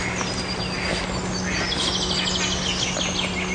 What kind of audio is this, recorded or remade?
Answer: recorded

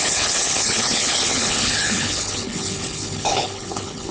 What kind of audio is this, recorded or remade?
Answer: remade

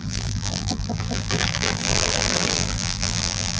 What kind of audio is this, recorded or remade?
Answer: remade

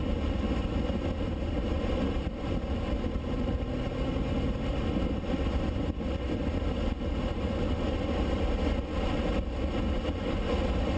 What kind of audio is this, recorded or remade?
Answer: recorded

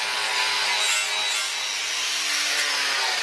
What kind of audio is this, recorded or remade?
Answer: recorded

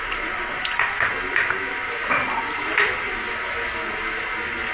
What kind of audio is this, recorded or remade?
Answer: recorded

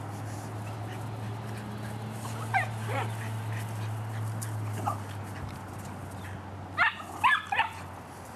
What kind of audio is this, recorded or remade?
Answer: recorded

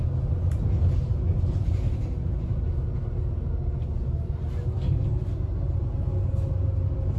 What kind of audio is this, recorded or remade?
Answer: recorded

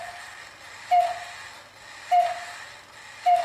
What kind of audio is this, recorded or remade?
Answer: recorded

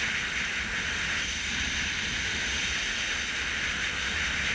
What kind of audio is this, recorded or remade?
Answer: recorded